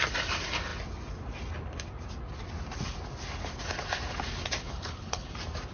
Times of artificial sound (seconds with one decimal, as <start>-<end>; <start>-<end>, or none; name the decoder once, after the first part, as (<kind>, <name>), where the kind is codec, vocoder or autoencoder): 4.6-5.3 (codec, HILCodec)